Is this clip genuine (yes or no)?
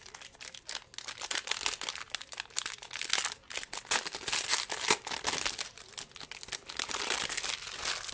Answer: yes